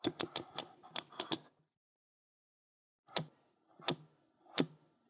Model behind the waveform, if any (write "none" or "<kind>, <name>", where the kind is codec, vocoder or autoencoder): none